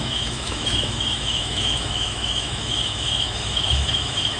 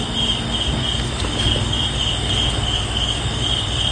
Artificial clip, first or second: first